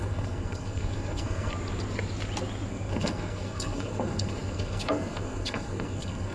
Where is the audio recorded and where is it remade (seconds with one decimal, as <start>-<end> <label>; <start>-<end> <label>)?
0.0-1.5 remade; 1.5-2.7 recorded; 2.7-6.3 remade